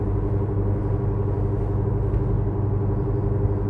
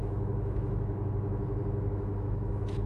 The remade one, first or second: second